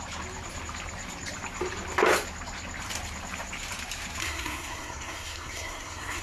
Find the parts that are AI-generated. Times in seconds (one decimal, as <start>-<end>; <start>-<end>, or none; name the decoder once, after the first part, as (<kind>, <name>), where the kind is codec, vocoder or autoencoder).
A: 4.2-6.2 (codec, SNAC)